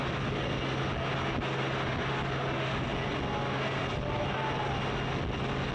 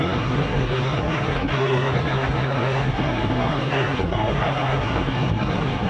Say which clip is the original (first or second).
first